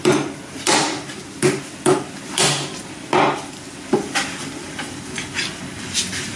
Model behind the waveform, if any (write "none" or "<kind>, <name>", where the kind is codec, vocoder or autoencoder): none